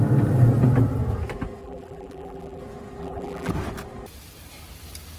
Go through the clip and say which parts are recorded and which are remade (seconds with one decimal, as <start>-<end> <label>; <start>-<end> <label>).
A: 0.0-1.6 recorded; 1.6-2.6 remade; 2.6-3.0 recorded; 3.0-3.5 remade; 3.5-5.2 recorded